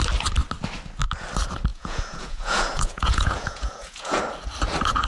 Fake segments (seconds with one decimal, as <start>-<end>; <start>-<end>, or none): 1.7-4.2